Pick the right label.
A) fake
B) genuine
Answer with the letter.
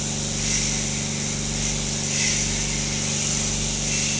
B